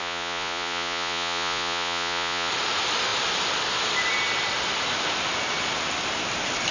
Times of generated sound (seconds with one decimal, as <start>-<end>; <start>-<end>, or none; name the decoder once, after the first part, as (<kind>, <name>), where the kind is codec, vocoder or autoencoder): 0.0-2.5 (vocoder, Vocos)

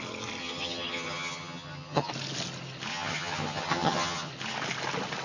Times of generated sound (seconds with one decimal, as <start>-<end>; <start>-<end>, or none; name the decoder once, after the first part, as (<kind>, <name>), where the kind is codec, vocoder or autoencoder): 0.4-2.1 (vocoder, HiFi-GAN); 2.9-4.3